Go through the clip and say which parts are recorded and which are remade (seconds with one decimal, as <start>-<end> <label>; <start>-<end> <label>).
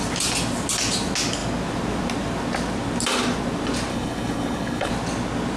0.0-3.9 recorded; 3.9-4.9 remade; 4.9-5.6 recorded